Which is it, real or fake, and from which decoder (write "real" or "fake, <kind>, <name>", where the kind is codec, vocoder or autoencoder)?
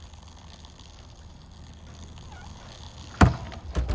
real